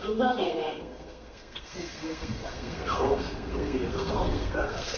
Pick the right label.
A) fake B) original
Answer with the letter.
A